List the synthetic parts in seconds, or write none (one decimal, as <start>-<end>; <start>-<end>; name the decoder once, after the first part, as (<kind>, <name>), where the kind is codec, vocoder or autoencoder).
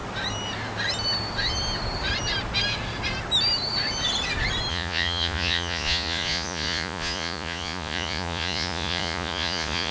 4.7-9.9 (vocoder, Vocos)